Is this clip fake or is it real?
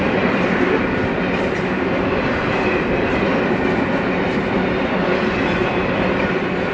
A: real